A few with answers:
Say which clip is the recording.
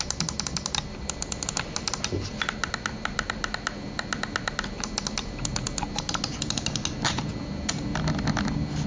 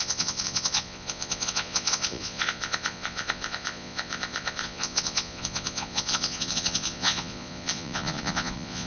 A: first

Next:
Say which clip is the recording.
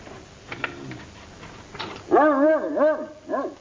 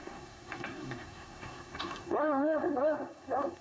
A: first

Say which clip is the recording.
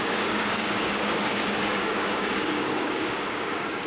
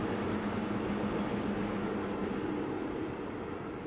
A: second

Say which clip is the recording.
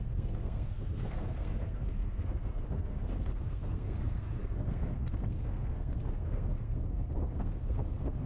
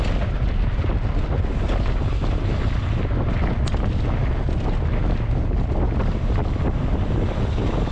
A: second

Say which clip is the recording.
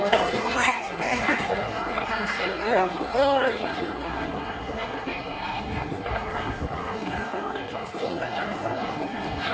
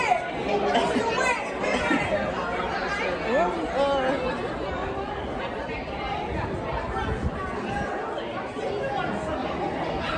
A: second